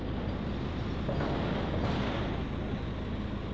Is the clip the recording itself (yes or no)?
yes